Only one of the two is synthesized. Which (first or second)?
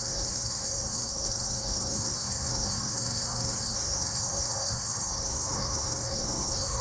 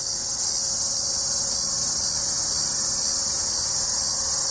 first